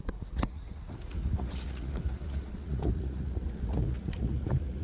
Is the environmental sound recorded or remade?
remade